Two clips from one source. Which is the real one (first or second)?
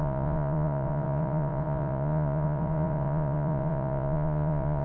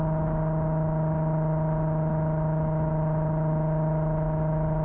second